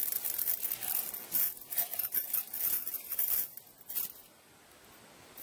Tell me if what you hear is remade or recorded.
recorded